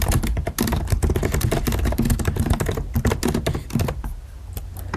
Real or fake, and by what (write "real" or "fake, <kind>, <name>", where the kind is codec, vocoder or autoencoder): real